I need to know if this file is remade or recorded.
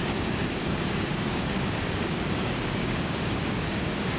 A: remade